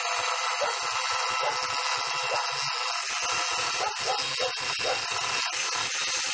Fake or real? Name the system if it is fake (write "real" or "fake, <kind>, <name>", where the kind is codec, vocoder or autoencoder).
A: real